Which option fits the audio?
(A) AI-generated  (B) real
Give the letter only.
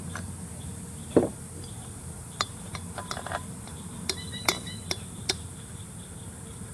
A